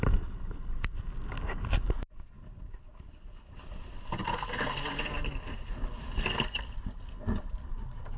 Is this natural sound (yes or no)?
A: yes